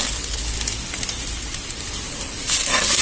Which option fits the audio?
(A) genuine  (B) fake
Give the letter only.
B